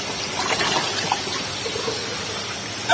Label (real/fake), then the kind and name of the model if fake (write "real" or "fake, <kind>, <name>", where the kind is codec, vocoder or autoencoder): real